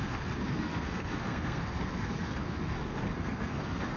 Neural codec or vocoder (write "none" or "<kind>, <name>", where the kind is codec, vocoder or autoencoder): codec, SNAC